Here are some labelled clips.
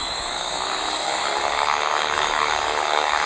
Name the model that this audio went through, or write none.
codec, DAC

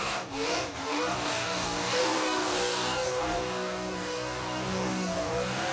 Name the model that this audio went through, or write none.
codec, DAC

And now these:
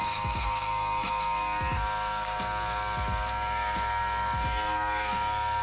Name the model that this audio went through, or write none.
codec, DAC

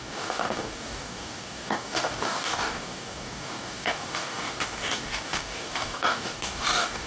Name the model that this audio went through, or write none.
codec, DAC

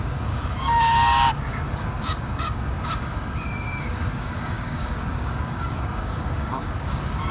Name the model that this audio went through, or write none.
codec, DAC